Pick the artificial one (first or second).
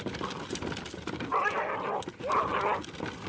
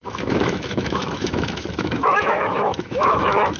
second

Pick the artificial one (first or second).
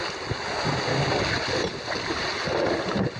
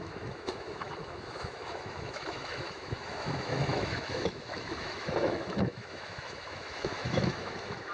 second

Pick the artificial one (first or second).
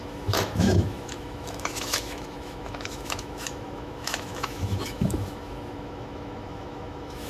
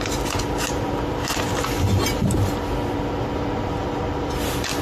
first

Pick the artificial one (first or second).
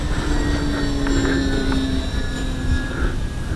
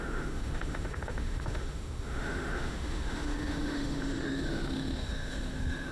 second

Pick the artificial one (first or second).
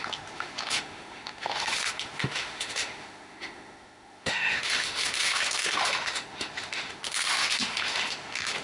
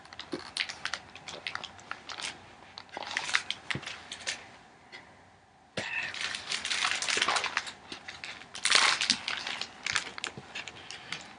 first